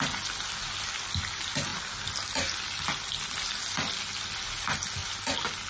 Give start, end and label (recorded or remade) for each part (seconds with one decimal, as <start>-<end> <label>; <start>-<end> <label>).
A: 0.0-5.7 recorded